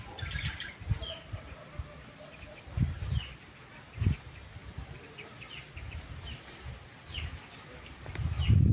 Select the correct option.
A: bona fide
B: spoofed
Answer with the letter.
A